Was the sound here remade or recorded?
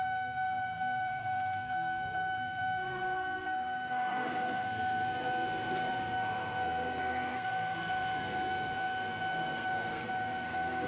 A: remade